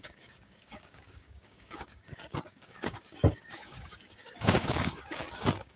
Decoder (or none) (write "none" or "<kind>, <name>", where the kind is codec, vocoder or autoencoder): codec, DAC